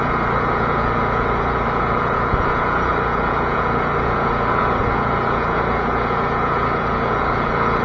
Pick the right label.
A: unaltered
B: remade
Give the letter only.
B